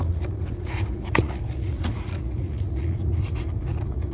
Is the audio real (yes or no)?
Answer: no